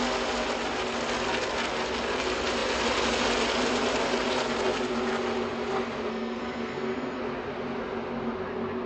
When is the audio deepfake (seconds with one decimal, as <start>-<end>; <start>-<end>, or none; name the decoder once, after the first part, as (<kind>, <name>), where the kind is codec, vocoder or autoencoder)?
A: 6.1-7.2 (codec, SNAC)